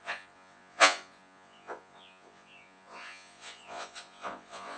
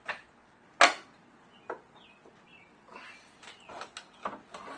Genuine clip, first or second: second